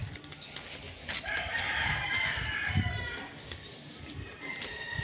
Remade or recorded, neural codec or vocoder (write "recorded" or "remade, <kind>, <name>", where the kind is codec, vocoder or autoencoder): recorded